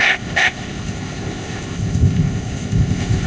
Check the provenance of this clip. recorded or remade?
remade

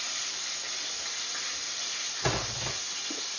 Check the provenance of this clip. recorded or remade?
recorded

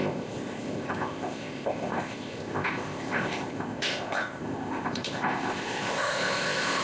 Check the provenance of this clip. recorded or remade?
remade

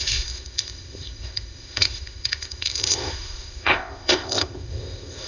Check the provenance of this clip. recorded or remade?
remade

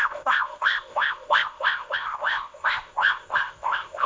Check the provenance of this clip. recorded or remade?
remade